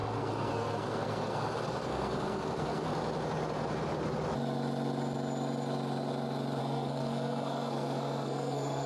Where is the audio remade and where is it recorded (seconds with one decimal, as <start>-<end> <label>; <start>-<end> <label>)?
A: 0.0-2.9 remade; 2.9-6.6 recorded; 6.6-8.9 remade

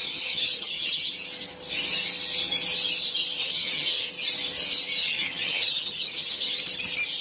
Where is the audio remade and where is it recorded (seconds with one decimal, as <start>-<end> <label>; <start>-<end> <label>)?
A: 0.0-1.1 remade; 1.1-3.4 recorded; 3.4-4.1 remade; 4.1-5.0 recorded; 5.0-6.6 remade; 6.6-7.2 recorded